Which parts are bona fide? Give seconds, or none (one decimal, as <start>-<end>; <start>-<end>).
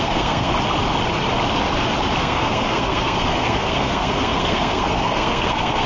0.5-2.2